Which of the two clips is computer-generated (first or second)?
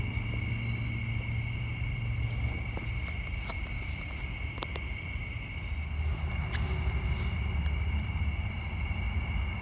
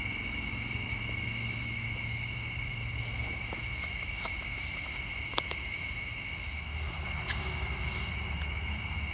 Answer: second